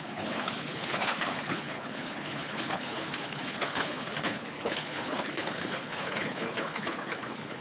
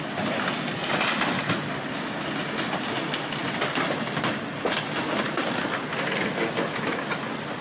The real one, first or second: second